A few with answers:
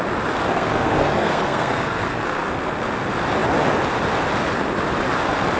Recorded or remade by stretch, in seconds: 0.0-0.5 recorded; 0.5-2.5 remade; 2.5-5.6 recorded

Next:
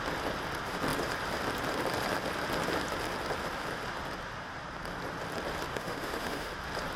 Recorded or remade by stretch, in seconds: 0.0-5.7 recorded; 5.7-6.5 remade; 6.5-7.0 recorded

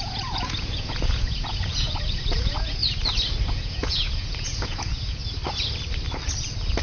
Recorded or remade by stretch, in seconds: 0.0-2.8 remade; 2.8-3.5 recorded; 3.5-5.2 remade; 5.2-6.8 recorded